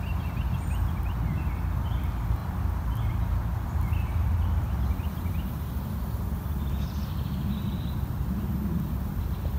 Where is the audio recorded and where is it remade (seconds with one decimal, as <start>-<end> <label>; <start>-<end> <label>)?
0.0-9.6 recorded